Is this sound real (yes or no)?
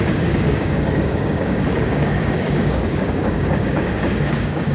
no